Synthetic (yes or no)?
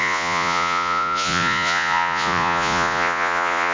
yes